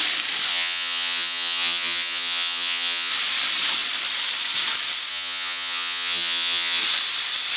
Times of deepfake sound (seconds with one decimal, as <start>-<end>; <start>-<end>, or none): 0.5-3.1; 5.1-6.8